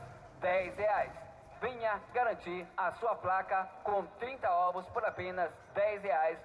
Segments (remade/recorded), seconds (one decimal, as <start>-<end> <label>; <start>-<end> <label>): 0.0-0.5 recorded; 0.5-1.2 remade; 1.2-3.9 recorded; 3.9-4.7 remade; 4.7-6.4 recorded